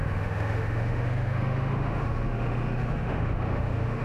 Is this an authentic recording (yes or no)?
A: no